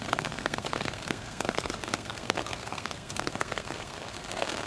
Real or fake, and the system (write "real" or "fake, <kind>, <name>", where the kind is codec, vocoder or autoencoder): fake, codec, SNAC